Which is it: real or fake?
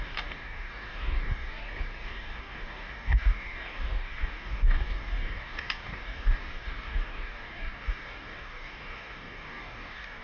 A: fake